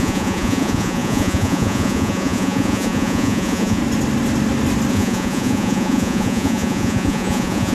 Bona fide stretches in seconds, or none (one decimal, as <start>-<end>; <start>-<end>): 3.8-4.9